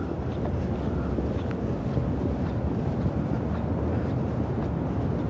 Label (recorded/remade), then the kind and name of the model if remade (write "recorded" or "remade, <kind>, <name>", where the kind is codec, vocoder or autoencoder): recorded